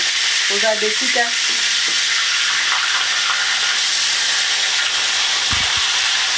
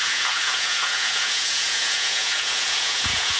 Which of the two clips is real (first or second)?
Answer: first